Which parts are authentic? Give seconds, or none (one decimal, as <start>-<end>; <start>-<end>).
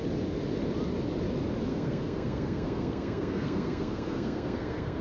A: 0.0-1.7